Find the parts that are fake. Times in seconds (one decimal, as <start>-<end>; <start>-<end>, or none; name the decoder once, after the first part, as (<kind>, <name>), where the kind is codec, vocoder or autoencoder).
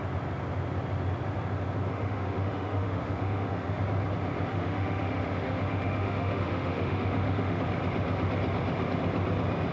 1.9-3.8 (autoencoder, DAC-VAE); 4.5-7.6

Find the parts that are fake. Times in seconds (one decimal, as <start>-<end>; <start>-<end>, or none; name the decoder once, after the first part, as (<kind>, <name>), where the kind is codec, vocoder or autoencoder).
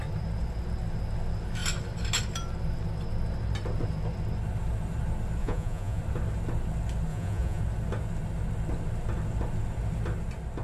5.4-6.0 (vocoder, Vocos); 7.1-7.6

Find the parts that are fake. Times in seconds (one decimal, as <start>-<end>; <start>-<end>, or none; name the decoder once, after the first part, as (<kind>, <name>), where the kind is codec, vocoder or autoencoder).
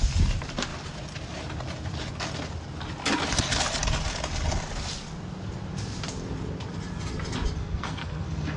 7.6-8.6 (codec, SNAC)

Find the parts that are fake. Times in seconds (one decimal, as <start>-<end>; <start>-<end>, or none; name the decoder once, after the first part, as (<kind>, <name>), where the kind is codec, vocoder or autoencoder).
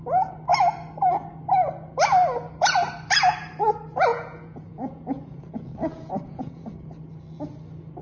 4.1-5.5 (vocoder, Vocos); 5.9-6.6